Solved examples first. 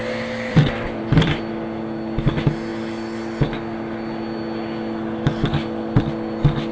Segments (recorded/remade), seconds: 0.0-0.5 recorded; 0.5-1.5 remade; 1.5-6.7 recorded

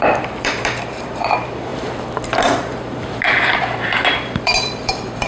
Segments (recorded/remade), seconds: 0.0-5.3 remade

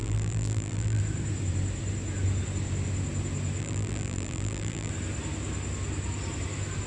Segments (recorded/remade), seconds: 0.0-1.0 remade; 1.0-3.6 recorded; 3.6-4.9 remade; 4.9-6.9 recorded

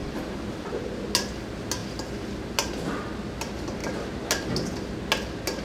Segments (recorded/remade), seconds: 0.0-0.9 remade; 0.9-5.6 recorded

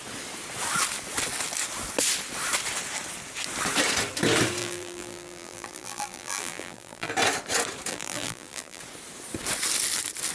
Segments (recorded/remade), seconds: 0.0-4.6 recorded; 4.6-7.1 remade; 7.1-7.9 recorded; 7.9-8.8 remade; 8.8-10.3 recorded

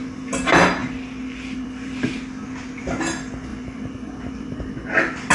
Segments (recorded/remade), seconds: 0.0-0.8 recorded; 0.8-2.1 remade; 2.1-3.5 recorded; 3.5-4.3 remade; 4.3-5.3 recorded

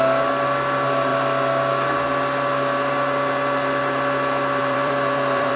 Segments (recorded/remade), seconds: 0.0-4.6 recorded; 4.6-5.6 remade